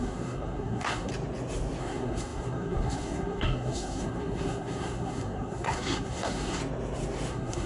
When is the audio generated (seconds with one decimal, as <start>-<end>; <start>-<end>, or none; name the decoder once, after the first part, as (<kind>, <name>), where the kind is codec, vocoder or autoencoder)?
0.0-1.1 (codec, SNAC); 1.8-6.6; 7.3-7.7